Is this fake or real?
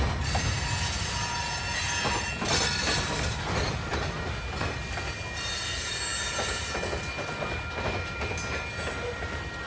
real